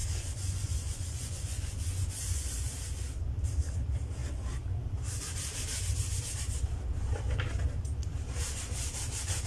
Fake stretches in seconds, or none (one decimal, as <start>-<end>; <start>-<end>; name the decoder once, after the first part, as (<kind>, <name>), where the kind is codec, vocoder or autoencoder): 0.0-2.7 (vocoder, Vocos)